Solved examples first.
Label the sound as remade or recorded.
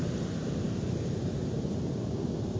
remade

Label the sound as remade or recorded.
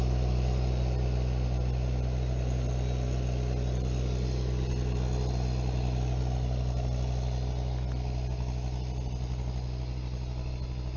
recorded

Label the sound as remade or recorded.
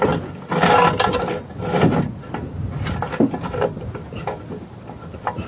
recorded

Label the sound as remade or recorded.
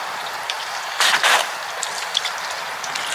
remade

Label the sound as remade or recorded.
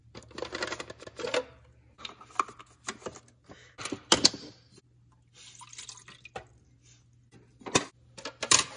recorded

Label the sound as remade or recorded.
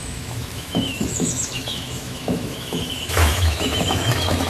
remade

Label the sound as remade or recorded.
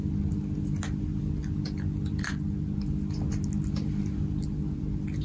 recorded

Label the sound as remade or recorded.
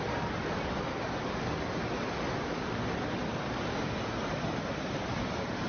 recorded